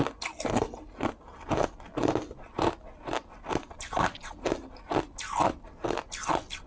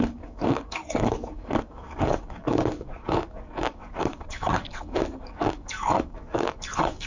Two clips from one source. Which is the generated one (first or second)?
second